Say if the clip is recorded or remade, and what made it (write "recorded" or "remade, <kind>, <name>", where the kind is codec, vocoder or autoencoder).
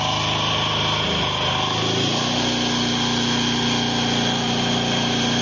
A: recorded